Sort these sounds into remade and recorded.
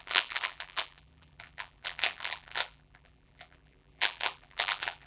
remade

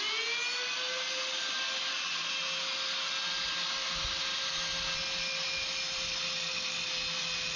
recorded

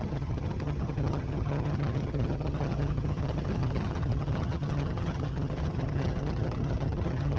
remade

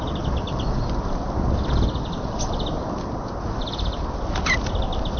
recorded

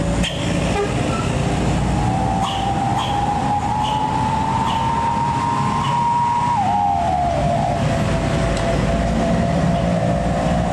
recorded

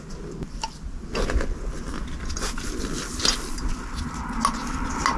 recorded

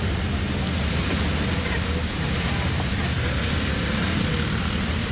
recorded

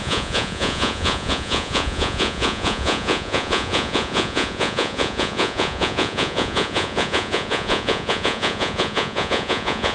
remade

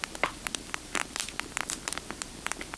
remade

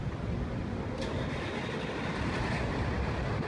recorded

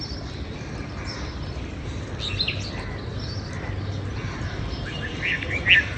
recorded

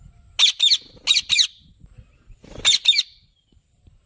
recorded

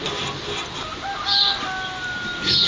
recorded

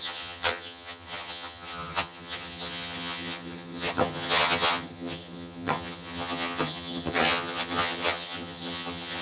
remade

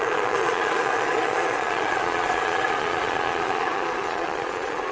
remade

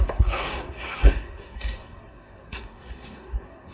remade